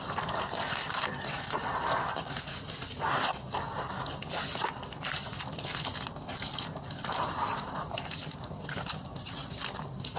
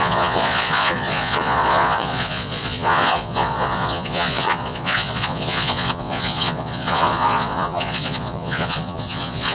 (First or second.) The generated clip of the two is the second